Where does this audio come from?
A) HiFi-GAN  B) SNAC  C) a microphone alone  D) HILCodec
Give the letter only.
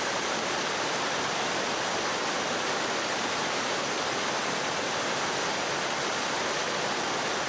C